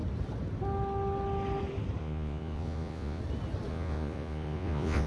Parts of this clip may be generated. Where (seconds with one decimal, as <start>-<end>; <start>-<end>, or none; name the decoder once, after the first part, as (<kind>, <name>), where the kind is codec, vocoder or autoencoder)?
2.0-3.2 (vocoder, Vocos); 3.7-5.1